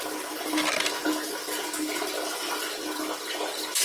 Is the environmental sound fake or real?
real